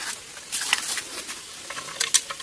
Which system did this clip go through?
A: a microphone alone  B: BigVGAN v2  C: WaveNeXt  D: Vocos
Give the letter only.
A